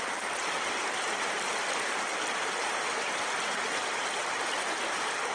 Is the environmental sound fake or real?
real